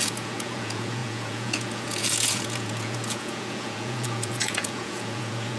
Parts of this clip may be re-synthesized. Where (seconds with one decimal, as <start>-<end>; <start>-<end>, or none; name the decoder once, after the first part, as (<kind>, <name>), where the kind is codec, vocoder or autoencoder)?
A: 0.0-5.6 (vocoder, Vocos)